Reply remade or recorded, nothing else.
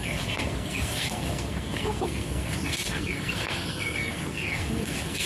remade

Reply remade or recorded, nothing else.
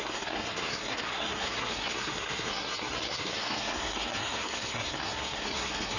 remade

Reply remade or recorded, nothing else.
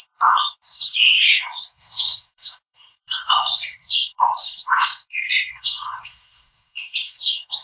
remade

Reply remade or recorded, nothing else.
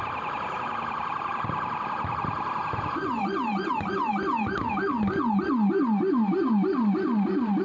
recorded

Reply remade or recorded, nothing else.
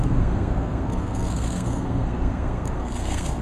remade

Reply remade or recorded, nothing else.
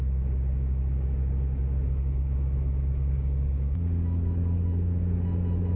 recorded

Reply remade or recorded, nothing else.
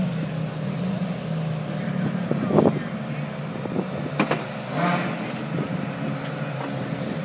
recorded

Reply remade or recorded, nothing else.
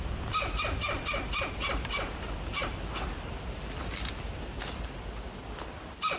recorded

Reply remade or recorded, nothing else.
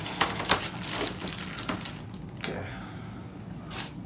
recorded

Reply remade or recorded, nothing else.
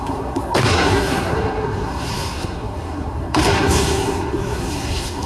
remade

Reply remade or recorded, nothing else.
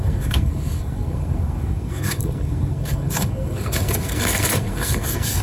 remade